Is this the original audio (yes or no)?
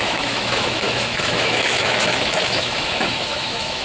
no